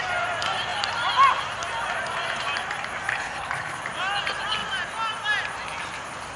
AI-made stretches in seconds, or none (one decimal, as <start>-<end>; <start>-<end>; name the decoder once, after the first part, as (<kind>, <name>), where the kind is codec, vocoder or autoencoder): 3.1-3.8 (codec, HILCodec)